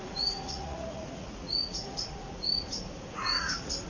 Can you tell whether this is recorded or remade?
remade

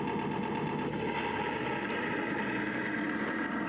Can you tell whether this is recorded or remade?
recorded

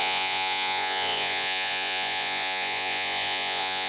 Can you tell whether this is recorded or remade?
remade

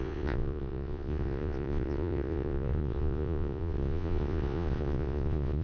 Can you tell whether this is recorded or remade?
remade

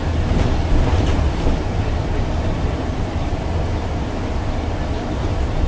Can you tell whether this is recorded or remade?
recorded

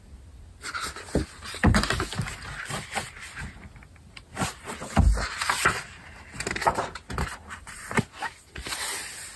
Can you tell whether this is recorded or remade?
recorded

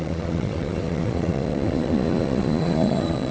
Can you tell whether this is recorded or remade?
remade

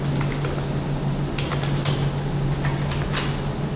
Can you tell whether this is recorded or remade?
recorded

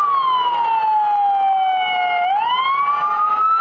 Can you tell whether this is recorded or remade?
recorded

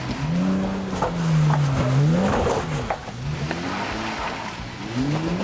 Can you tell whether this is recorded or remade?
recorded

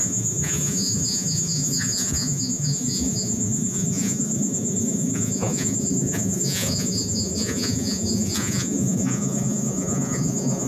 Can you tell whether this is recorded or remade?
remade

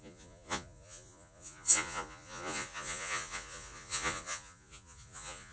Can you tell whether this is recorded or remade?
remade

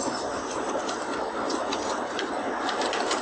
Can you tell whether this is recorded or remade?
recorded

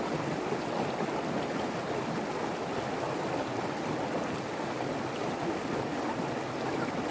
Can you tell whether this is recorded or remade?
recorded